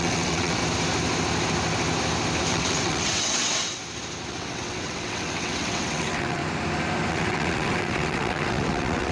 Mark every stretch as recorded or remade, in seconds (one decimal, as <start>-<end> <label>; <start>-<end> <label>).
0.0-0.6 remade; 0.6-2.5 recorded; 2.5-3.8 remade; 3.8-4.3 recorded; 4.3-6.4 remade; 6.4-7.1 recorded; 7.1-9.1 remade